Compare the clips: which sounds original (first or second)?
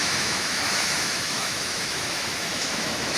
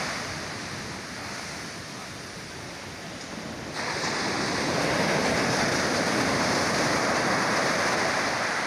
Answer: second